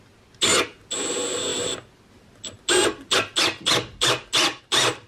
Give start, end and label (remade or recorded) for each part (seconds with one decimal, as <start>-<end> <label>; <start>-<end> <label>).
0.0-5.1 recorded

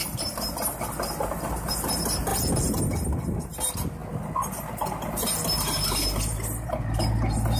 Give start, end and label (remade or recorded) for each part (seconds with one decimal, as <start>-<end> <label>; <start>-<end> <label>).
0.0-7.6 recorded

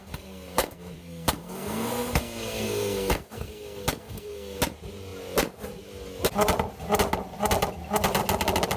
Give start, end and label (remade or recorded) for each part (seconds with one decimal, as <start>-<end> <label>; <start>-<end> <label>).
0.0-4.6 remade; 4.6-8.8 recorded